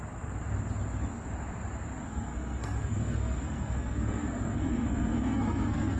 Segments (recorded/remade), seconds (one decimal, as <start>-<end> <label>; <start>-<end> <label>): 0.0-2.1 recorded; 2.1-6.0 remade